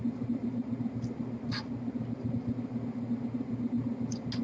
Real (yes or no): yes